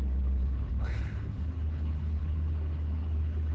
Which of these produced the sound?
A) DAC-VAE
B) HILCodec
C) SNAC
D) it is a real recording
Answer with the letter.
B